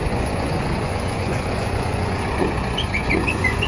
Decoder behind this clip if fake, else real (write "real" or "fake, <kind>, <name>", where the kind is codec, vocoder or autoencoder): fake, vocoder, Vocos